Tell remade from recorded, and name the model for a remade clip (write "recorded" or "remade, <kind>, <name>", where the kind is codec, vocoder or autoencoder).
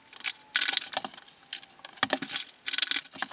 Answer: recorded